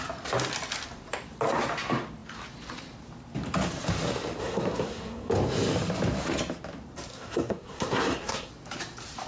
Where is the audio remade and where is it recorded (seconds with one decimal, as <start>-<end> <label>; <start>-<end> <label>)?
0.0-4.4 recorded; 4.4-5.3 remade; 5.3-7.1 recorded; 7.1-8.5 remade; 8.5-9.3 recorded